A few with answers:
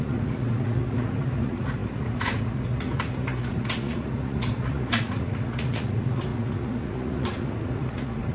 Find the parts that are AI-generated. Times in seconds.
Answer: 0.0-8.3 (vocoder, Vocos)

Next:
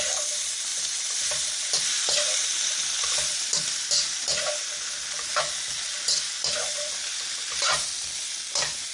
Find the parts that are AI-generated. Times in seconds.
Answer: 0.0-4.3 (vocoder, BigVGAN v2); 6.7-8.9

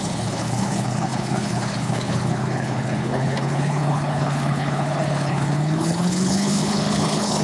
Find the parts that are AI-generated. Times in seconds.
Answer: 0.0-7.4 (codec, HILCodec)

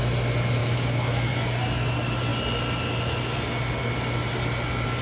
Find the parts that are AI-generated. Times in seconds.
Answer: 0.6-1.3 (autoencoder, DAC-VAE)

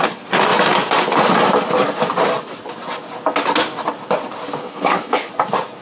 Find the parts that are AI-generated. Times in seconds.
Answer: 4.6-5.3 (codec, HILCodec)